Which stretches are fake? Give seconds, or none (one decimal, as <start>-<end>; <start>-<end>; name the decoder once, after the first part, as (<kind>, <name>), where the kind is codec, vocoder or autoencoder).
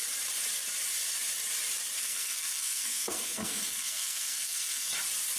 2.0-4.9 (codec, SNAC)